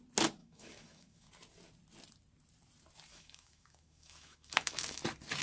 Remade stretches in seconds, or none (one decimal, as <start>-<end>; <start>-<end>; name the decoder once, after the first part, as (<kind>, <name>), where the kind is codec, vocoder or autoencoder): 0.4-1.3 (autoencoder, DAC-VAE); 3.1-5.0